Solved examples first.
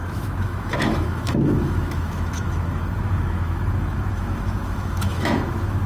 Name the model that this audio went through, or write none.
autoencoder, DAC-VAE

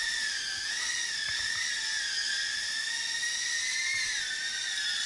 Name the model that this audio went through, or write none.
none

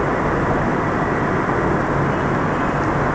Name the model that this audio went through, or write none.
none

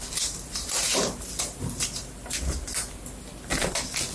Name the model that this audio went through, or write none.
none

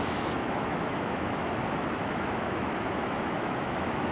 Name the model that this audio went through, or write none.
autoencoder, DAC-VAE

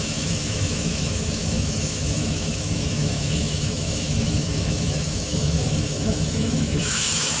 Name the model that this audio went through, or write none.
autoencoder, DAC-VAE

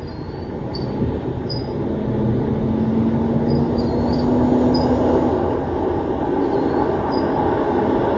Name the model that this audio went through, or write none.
none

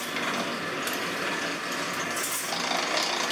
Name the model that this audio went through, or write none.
none